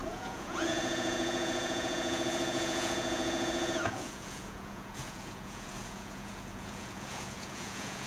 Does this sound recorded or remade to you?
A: remade